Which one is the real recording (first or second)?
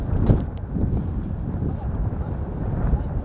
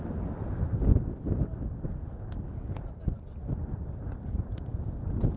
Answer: second